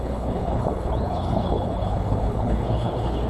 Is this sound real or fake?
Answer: fake